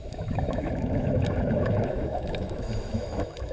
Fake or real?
fake